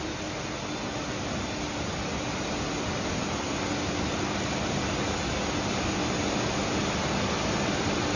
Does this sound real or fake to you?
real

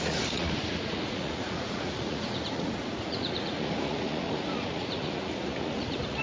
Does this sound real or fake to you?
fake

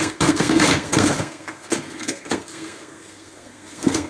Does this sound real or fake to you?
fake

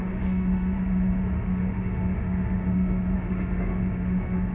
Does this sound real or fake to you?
fake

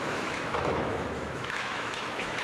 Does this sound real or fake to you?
fake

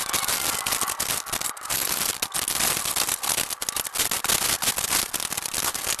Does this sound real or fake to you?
real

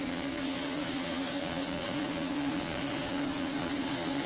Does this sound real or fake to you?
fake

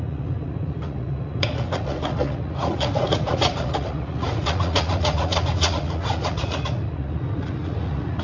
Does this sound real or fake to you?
fake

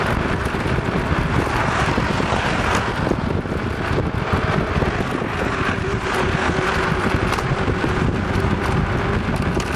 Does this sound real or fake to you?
real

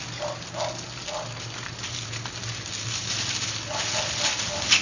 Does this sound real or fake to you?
real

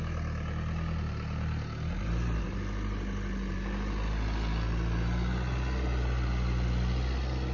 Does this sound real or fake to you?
real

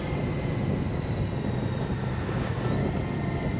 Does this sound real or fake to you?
real